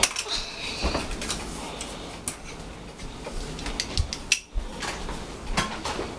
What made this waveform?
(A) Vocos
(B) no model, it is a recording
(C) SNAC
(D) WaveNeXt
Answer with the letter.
B